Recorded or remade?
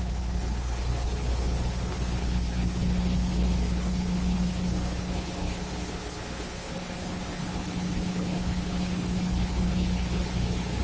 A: remade